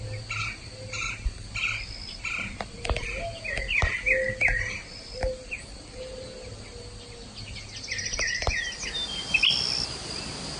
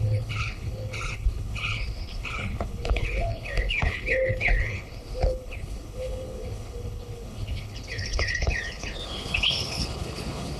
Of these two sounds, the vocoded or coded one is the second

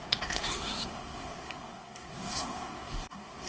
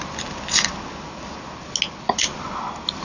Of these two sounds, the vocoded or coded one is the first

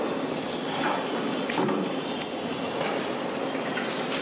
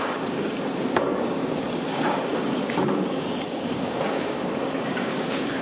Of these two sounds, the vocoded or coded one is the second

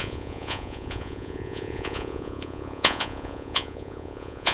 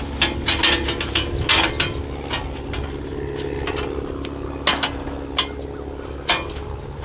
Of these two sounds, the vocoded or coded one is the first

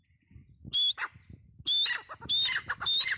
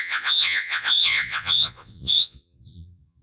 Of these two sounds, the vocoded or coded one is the second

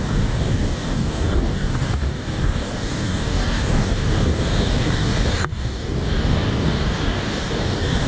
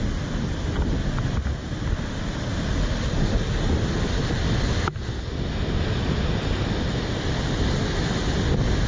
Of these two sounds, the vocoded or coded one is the first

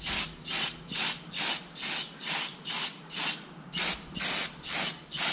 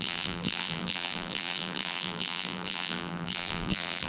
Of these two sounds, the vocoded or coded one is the second